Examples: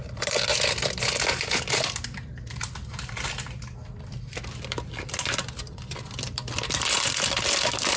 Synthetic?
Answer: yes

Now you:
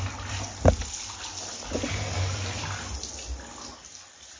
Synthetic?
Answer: no